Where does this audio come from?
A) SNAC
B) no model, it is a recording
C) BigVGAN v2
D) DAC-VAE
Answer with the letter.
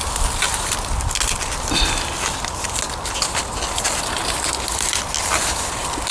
B